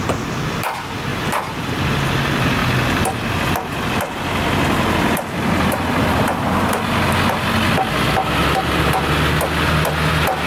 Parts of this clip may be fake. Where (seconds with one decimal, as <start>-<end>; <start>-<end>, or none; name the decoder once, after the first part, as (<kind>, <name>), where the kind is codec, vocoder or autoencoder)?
1.1-1.8 (vocoder, BigVGAN v2); 2.6-3.3